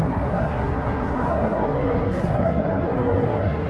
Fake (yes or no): yes